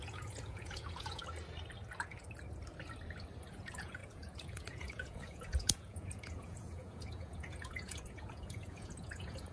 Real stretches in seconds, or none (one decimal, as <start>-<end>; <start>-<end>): 1.2-3.5